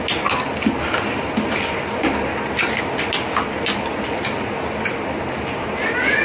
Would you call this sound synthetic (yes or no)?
no